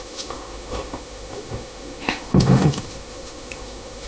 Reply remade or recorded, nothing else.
remade